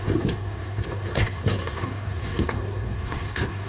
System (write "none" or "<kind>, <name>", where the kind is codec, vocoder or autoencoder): codec, SNAC